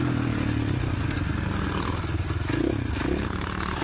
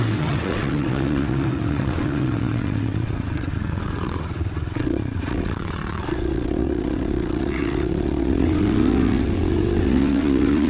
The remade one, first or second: second